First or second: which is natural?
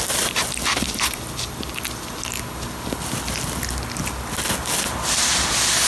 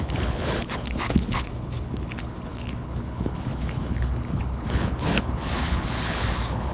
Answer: first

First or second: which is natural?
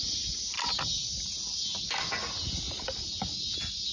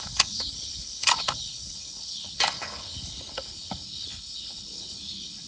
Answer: first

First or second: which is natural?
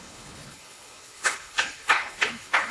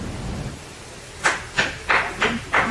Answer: second